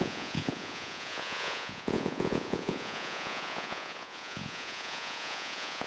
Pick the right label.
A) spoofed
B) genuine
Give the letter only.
A